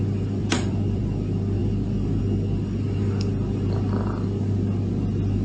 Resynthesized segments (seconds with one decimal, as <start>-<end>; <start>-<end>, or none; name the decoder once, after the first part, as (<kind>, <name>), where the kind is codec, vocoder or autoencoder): 0.4-1.0 (vocoder, BigVGAN v2)